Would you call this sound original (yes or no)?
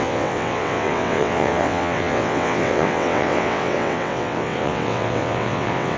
no